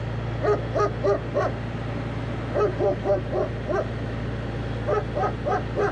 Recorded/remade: recorded